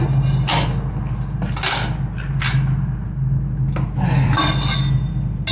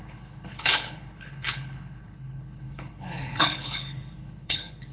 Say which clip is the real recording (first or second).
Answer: first